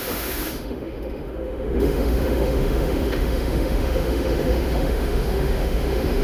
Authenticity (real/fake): fake